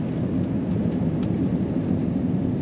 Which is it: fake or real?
real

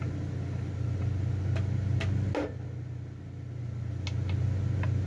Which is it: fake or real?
real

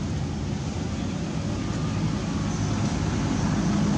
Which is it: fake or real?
real